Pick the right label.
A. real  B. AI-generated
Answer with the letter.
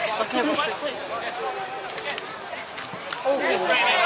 A